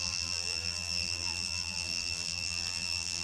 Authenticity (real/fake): fake